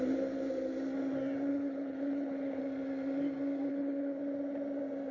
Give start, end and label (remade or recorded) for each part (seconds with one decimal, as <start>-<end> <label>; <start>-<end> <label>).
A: 0.0-1.5 recorded; 1.5-2.6 remade; 2.6-3.7 recorded; 3.7-4.2 remade; 4.2-5.1 recorded